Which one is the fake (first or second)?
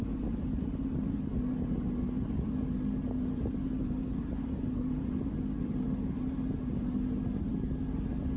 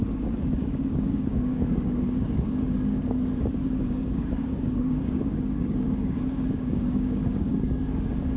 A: second